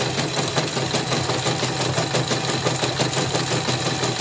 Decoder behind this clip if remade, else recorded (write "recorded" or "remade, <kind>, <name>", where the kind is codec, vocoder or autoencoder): recorded